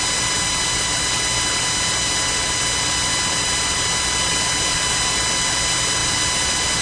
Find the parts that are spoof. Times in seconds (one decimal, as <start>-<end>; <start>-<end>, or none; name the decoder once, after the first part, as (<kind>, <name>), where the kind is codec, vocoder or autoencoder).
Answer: none